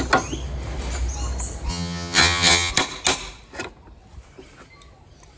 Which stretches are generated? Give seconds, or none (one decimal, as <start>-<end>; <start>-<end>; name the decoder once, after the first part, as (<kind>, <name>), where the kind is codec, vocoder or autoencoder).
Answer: 1.7-2.7 (vocoder, HiFi-GAN)